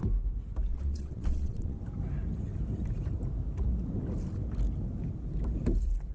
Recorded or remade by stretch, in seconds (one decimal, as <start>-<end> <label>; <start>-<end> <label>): 0.0-0.7 recorded; 0.7-1.8 remade; 1.8-6.1 recorded